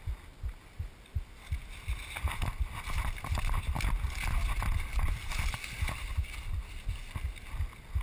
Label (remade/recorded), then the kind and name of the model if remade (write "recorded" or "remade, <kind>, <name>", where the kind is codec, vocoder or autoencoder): recorded